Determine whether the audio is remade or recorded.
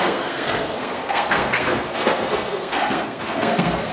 remade